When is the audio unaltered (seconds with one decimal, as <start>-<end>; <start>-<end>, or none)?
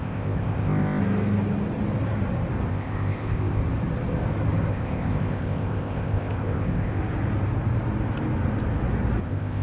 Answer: 1.0-2.7; 3.6-4.7; 7.0-9.2